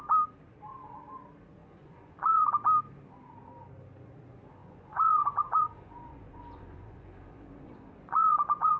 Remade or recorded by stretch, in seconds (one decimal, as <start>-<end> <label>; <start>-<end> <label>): 0.0-1.6 recorded; 1.6-2.5 remade; 2.5-4.6 recorded; 4.6-8.8 remade